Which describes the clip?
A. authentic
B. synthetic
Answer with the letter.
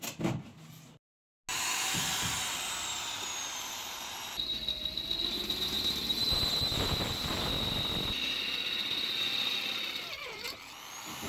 A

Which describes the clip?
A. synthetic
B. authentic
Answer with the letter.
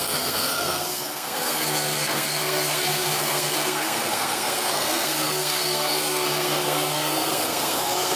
A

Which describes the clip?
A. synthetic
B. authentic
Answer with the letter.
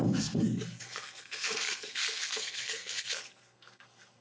A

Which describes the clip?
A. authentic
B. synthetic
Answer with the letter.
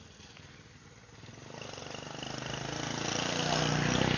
A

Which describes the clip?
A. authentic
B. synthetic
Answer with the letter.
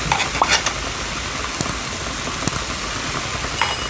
A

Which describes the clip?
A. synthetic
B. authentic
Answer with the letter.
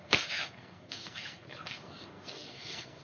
A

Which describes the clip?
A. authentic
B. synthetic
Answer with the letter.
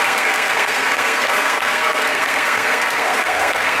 B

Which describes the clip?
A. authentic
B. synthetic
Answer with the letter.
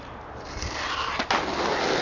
A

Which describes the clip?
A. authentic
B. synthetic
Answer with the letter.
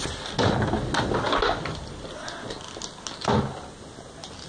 A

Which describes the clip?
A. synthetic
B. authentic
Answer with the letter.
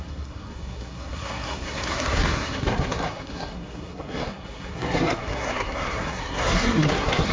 A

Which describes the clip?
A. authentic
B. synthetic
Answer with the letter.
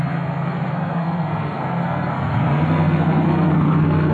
B